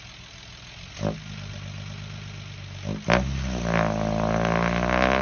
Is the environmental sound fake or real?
real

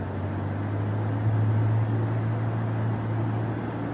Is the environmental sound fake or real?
real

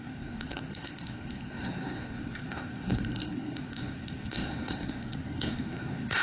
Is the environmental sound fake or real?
fake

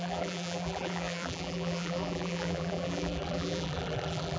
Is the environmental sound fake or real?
fake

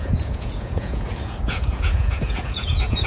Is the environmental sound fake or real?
fake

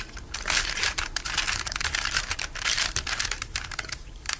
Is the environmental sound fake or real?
fake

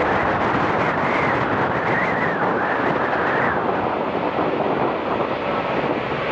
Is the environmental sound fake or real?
real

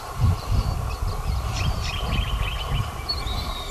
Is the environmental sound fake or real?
fake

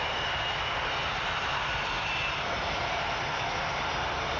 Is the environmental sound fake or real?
real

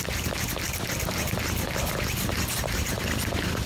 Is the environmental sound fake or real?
real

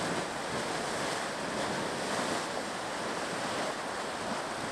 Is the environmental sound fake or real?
real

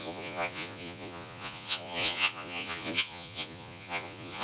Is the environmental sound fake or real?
fake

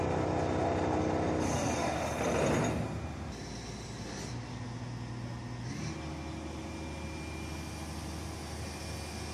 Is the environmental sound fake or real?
real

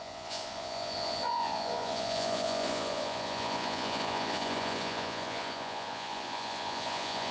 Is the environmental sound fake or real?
fake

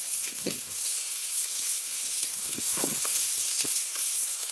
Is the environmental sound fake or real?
fake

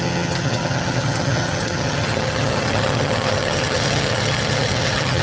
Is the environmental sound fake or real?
fake